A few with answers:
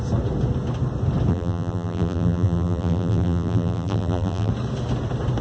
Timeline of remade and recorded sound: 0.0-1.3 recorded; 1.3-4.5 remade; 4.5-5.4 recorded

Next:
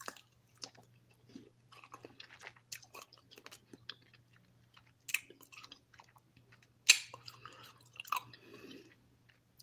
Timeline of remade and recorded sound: 0.0-9.6 recorded